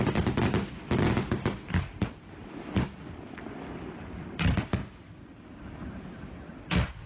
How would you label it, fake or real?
real